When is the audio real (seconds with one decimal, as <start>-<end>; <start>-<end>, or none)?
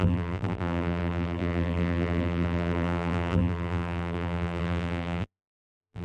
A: none